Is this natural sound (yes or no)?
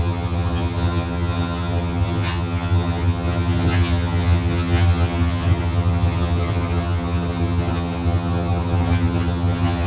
no